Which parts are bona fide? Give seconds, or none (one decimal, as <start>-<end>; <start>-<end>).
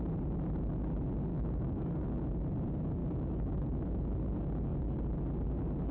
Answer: 0.0-1.3; 2.2-3.0; 4.0-5.9